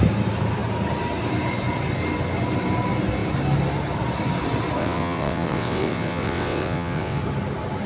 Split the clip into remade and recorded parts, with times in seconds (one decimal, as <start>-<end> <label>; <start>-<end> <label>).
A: 0.0-4.8 recorded; 4.8-7.2 remade; 7.2-7.9 recorded